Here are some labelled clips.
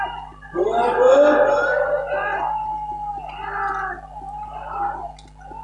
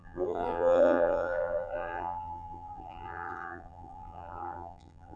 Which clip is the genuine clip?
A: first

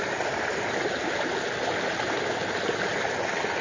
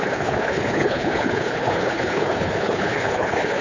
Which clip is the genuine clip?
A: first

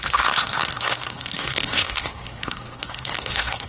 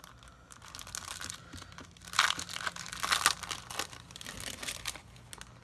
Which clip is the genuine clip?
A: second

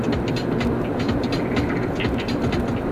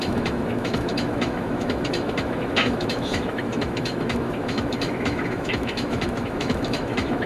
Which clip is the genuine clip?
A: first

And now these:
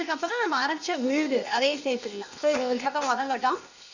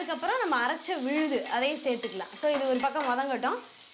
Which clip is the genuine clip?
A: second